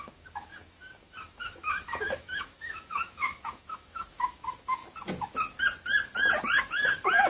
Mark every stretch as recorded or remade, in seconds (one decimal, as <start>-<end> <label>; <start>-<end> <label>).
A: 0.0-4.8 remade; 4.8-6.6 recorded; 6.6-7.3 remade